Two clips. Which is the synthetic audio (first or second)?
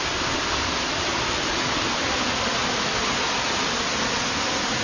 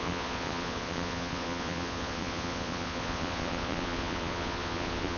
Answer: second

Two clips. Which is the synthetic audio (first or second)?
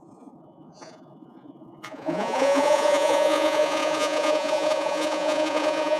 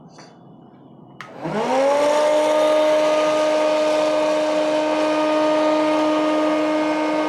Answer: first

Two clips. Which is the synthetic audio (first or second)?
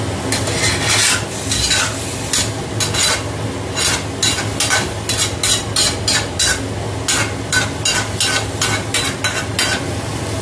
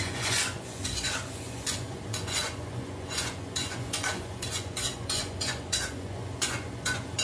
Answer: second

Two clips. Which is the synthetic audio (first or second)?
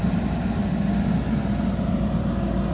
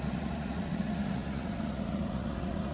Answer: second